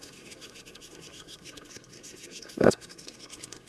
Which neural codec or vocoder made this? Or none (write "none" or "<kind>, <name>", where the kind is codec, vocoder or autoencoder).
codec, SNAC